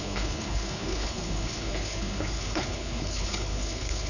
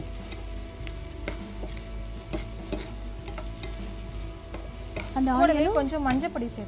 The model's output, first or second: first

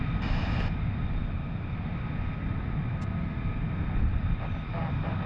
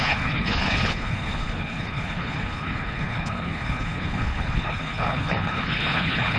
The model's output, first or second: second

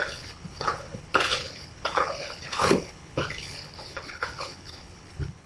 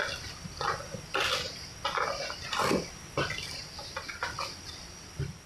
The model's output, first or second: first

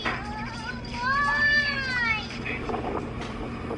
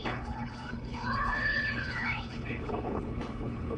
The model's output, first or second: second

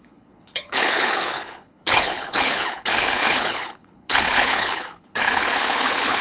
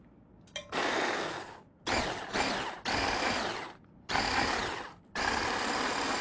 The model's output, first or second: first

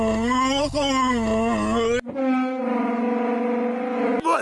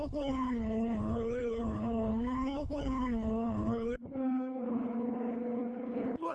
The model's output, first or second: second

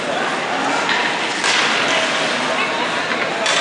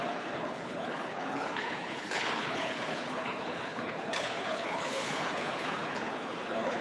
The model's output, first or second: second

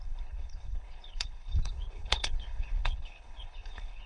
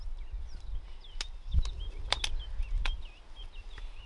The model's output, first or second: first